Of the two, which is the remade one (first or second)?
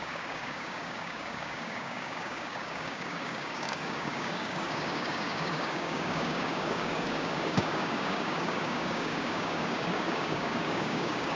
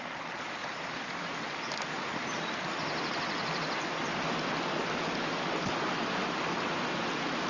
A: first